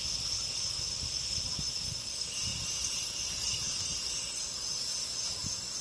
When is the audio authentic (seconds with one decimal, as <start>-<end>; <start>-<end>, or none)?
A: 0.0-2.5; 3.6-5.8